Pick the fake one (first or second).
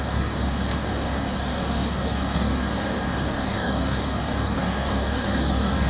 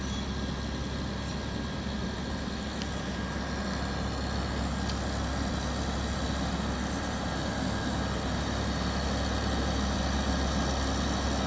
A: first